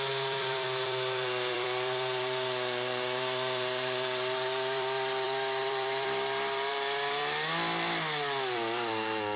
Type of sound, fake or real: fake